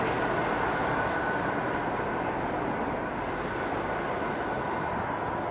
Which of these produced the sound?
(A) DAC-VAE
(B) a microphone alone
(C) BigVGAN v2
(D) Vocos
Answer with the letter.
B